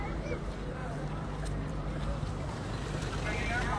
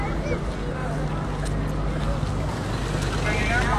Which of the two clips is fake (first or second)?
first